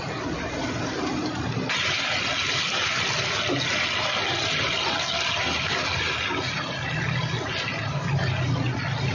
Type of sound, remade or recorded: recorded